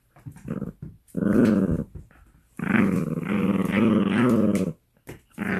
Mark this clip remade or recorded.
recorded